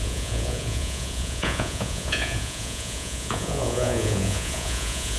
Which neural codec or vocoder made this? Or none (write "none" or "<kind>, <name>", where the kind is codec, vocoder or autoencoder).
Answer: vocoder, Vocos